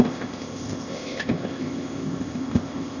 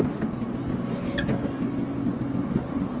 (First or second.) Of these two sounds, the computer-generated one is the first